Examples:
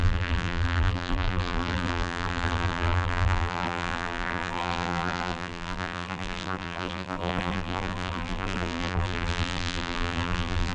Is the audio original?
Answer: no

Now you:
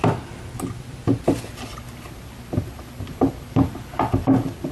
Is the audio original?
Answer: yes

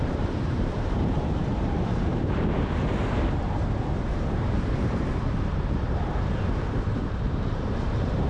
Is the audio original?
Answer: no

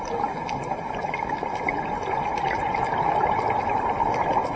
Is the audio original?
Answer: yes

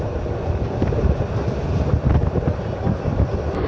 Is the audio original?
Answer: yes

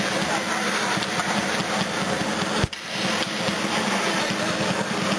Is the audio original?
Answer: yes